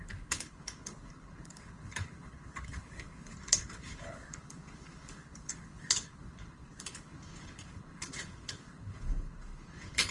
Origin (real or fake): fake